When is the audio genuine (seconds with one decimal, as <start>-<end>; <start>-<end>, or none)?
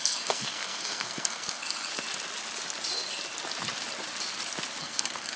1.9-4.8